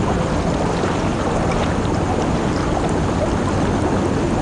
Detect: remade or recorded recorded